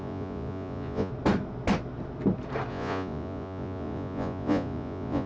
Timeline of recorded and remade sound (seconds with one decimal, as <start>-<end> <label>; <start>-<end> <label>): 0.0-1.1 remade; 1.1-2.7 recorded; 2.7-5.3 remade